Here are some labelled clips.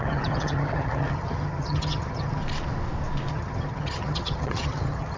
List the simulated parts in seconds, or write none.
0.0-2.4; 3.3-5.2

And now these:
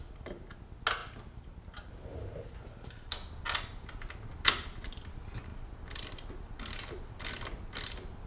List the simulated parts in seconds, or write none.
none

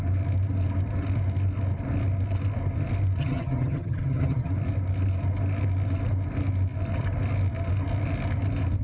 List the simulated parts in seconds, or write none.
3.2-4.5

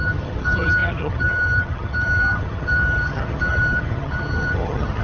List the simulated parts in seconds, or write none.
0.0-5.0